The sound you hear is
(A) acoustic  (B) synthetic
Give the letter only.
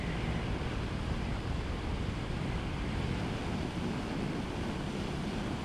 A